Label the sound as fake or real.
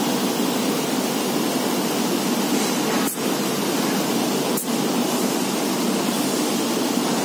real